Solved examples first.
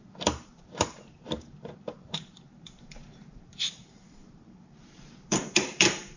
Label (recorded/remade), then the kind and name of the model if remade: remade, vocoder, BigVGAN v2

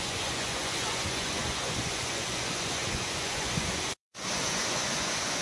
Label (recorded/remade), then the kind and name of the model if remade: remade, vocoder, Vocos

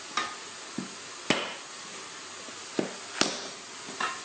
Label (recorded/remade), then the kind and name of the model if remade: recorded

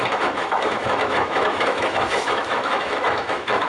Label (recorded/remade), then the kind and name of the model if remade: remade, autoencoder, DAC-VAE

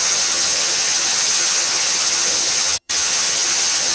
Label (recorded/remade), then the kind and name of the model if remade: remade, vocoder, HiFi-GAN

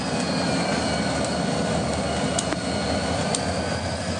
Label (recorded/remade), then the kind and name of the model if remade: recorded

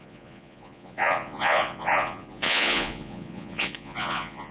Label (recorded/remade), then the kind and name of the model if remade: remade, vocoder, Vocos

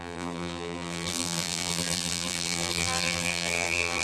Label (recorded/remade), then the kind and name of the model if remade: remade, vocoder, BigVGAN v2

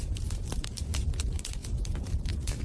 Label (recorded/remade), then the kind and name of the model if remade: remade, vocoder, BigVGAN v2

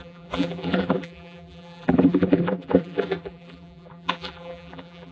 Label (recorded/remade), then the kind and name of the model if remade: remade, vocoder, BigVGAN v2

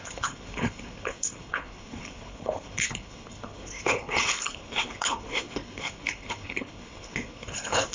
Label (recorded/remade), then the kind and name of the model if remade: remade, codec, HILCodec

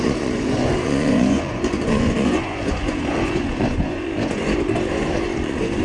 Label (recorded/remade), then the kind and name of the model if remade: remade, vocoder, Vocos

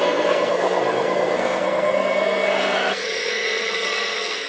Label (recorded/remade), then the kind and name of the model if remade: remade, codec, SNAC